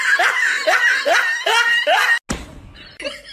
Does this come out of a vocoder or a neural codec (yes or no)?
no